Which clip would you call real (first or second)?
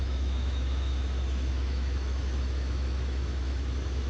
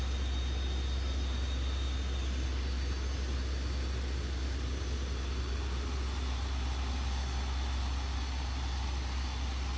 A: second